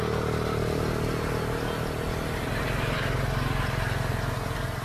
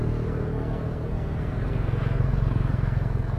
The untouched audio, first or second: first